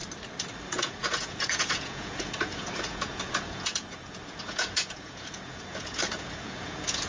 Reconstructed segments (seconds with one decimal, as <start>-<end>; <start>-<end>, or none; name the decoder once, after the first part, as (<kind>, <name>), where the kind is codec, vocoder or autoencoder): 0.7-7.1 (vocoder, Vocos)